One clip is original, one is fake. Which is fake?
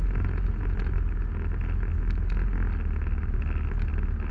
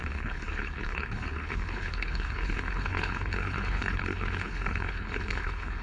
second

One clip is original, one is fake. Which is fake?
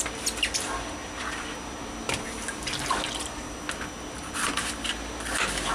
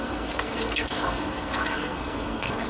second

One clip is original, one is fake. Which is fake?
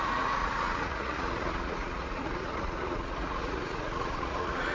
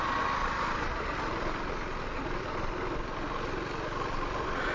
first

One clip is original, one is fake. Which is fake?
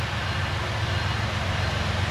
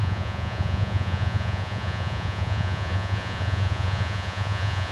second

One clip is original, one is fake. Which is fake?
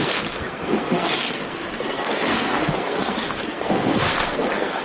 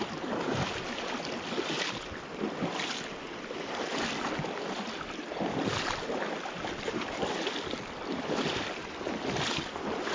first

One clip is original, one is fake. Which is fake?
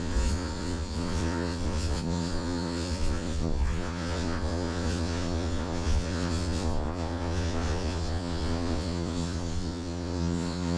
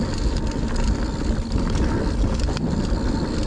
first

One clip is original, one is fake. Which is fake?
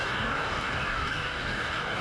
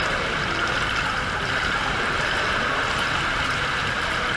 first